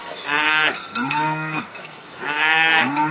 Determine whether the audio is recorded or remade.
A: remade